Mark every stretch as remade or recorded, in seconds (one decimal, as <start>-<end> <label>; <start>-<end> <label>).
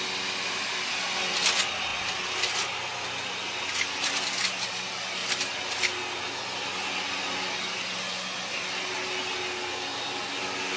0.0-10.8 recorded